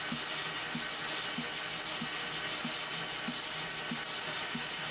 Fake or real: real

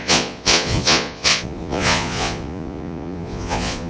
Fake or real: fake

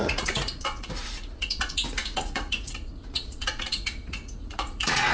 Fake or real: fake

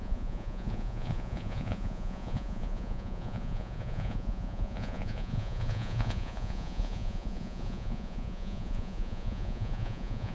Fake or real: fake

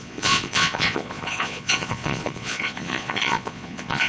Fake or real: fake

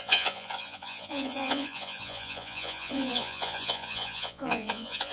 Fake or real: fake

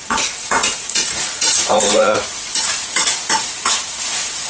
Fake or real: fake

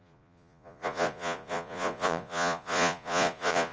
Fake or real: fake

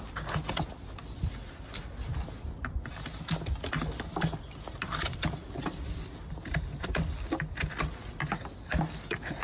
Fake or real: real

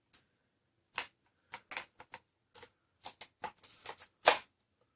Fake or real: real